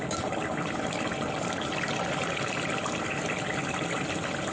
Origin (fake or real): real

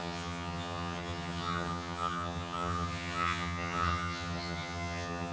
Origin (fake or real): fake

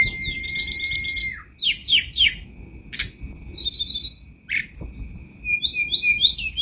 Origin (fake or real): real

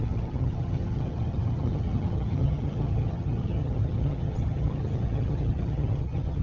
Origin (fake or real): fake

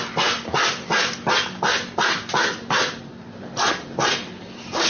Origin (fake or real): real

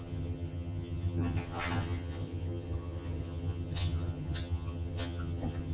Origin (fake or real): fake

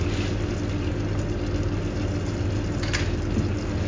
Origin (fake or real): real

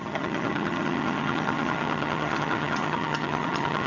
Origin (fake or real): fake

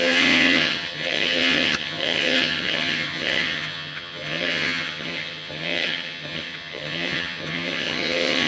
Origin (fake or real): fake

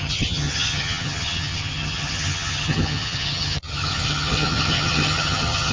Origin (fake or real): fake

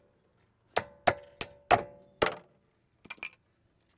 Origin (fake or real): real